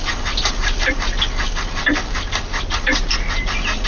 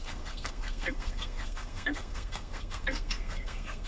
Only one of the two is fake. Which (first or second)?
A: second